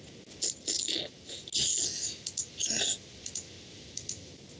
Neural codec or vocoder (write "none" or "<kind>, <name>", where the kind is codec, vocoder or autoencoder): none